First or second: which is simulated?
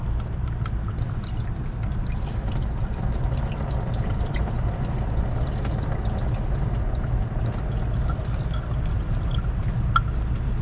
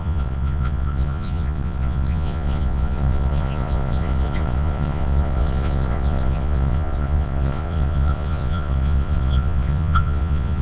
second